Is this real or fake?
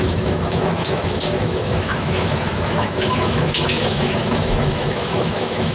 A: fake